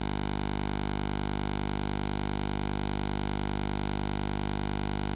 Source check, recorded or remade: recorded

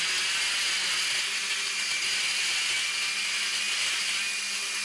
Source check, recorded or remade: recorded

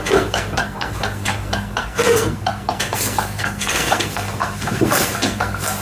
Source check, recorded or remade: remade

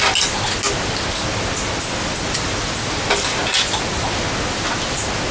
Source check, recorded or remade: recorded